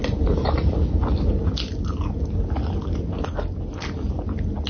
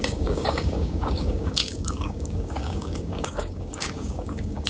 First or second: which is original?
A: first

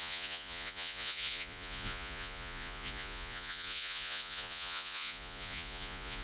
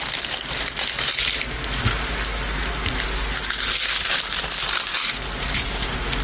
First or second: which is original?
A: second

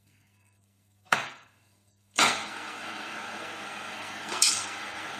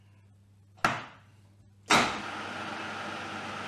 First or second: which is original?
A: second